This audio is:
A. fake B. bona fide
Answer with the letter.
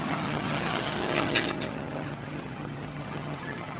A